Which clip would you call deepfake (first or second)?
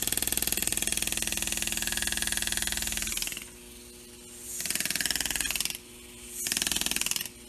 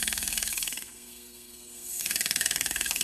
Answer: second